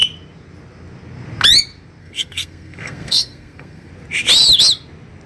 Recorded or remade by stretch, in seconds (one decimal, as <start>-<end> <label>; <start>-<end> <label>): 0.0-2.0 recorded; 2.0-3.9 remade; 3.9-5.3 recorded